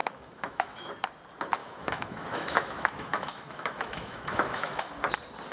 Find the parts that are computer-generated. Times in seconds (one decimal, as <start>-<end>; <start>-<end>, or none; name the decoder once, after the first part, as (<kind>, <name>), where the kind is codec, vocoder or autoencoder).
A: 0.0-0.9 (autoencoder, DAC-VAE); 1.6-4.9